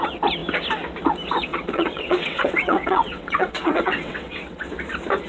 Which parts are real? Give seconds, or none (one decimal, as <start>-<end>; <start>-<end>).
0.0-1.5; 4.7-5.3